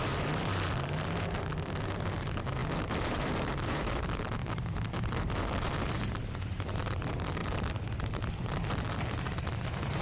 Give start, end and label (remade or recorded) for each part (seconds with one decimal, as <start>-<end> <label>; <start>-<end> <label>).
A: 0.0-10.0 remade